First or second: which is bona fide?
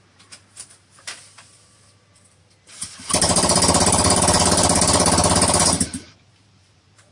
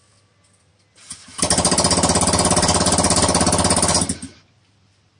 second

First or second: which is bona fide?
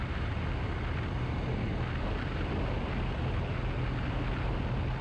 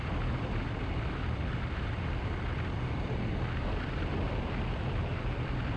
first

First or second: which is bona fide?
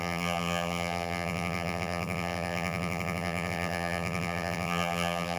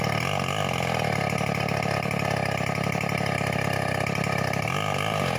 second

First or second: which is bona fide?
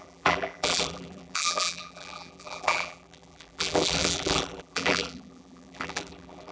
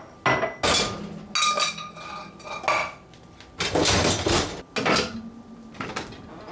second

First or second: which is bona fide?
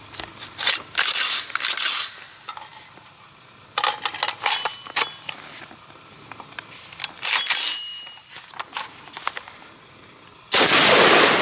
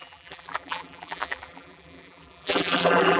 first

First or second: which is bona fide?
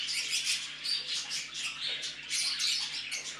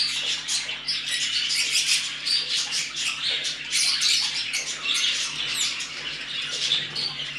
first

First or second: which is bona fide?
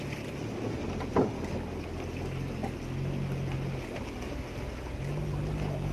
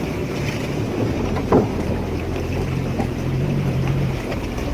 first